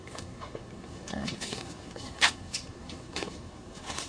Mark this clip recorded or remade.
remade